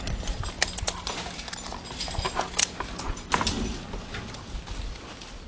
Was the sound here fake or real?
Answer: real